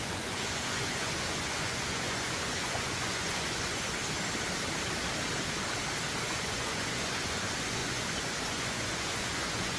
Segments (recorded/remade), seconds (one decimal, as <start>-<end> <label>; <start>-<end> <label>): 0.0-4.0 remade; 4.0-6.2 recorded; 6.2-9.8 remade